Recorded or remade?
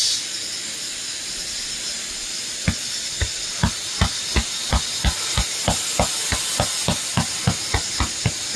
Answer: recorded